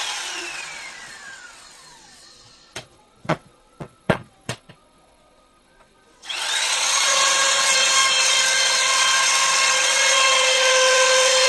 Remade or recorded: remade